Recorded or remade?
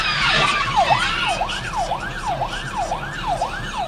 recorded